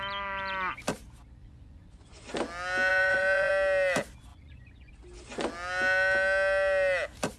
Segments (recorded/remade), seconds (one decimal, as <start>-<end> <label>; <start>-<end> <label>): 0.0-1.4 recorded; 1.4-2.3 remade; 2.3-2.9 recorded; 2.9-3.5 remade; 3.5-4.3 recorded; 4.3-4.9 remade; 4.9-7.4 recorded

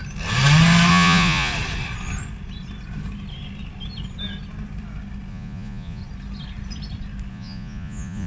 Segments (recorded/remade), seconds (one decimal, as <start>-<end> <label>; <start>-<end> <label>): 0.0-0.9 recorded; 0.9-1.5 remade; 1.5-5.3 recorded; 5.3-6.0 remade; 6.0-7.3 recorded; 7.3-8.3 remade

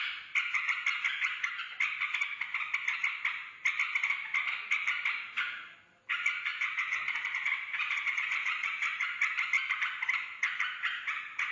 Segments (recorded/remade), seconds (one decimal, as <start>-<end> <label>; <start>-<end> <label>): 0.0-6.5 recorded; 6.5-9.2 remade; 9.2-10.9 recorded; 10.9-11.5 remade

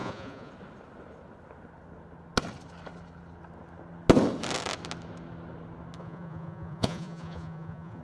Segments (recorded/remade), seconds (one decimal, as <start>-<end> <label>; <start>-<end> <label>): 0.0-0.5 remade; 0.5-6.0 recorded; 6.0-8.0 remade

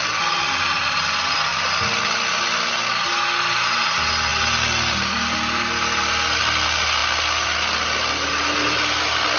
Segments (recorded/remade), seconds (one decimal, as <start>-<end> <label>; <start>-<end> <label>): 0.0-9.4 recorded

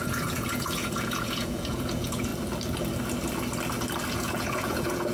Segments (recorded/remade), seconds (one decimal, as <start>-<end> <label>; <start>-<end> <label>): 0.0-2.3 remade; 2.3-4.1 recorded; 4.1-5.1 remade

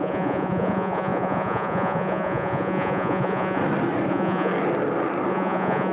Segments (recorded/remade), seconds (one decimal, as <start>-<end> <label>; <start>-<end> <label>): 0.0-3.6 remade; 3.6-4.1 recorded; 4.1-4.5 remade; 4.5-5.3 recorded; 5.3-5.9 remade

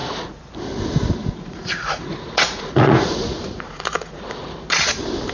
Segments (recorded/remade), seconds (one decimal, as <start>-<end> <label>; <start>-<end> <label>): 0.0-0.5 remade; 0.5-1.2 recorded; 1.2-4.4 remade; 4.4-5.3 recorded